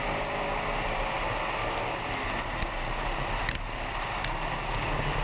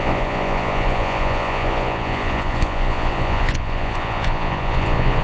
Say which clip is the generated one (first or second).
second